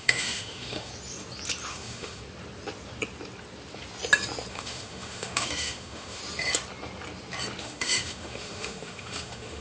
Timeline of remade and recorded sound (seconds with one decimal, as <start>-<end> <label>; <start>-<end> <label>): 0.0-0.9 remade; 0.9-1.7 recorded; 1.7-2.2 remade; 2.2-4.5 recorded; 4.5-6.2 remade; 6.2-7.6 recorded; 7.6-9.6 remade

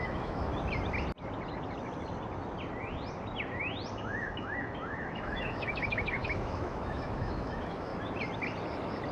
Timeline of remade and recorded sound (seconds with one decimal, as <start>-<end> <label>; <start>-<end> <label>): 0.0-0.5 remade; 0.5-3.9 recorded; 3.9-7.9 remade; 7.9-9.1 recorded

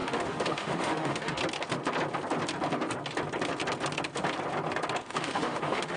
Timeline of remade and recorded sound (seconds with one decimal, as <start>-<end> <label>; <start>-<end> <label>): 0.0-1.4 remade; 1.4-5.0 recorded; 5.0-6.0 remade